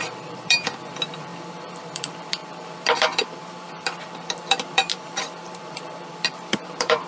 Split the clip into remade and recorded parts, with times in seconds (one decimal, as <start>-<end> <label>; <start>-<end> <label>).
0.0-1.3 remade; 1.3-1.8 recorded; 1.8-7.1 remade